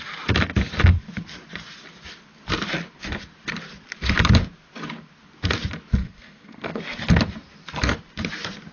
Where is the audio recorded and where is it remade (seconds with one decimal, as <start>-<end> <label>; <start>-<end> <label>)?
0.0-6.0 recorded; 6.0-6.8 remade; 6.8-8.7 recorded